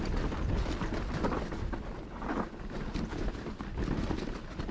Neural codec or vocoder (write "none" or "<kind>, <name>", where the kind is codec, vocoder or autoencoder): none